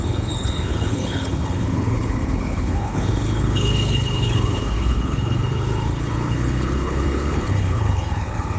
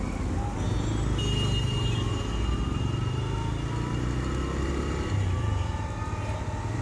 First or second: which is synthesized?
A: first